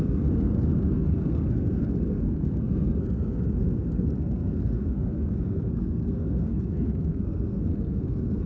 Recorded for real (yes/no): no